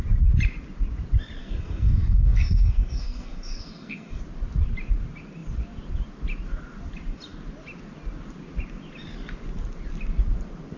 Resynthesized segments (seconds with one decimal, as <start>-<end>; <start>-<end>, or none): 1.4-4.2